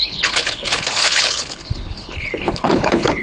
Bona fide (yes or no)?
no